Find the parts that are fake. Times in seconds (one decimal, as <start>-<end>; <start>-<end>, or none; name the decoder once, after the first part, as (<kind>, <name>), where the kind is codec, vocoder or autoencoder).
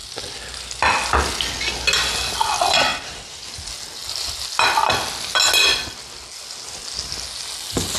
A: 2.9-3.6 (vocoder, BigVGAN v2)